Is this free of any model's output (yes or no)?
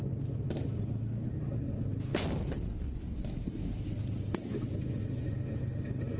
yes